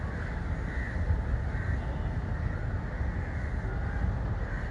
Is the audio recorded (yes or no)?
yes